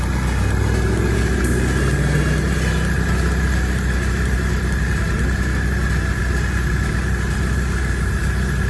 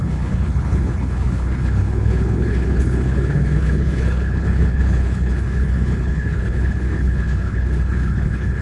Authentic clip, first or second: first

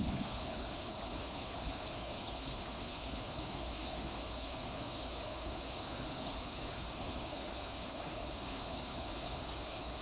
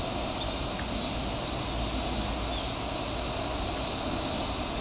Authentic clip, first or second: second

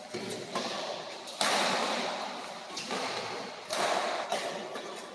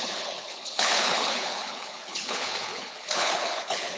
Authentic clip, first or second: first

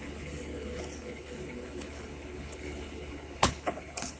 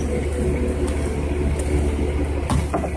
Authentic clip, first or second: second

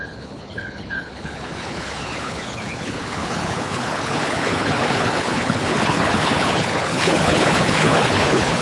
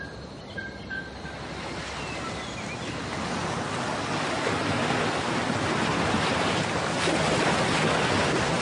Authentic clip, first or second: second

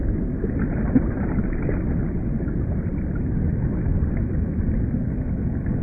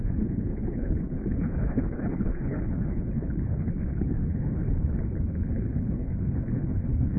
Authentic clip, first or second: first